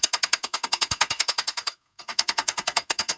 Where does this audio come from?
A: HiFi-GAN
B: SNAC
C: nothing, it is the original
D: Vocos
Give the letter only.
B